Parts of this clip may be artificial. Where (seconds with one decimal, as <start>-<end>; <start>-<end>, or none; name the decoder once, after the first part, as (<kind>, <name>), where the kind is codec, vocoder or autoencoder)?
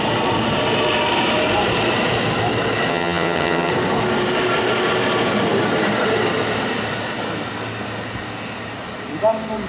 2.9-3.7 (vocoder, HiFi-GAN)